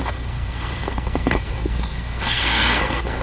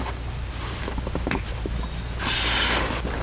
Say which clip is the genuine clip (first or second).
second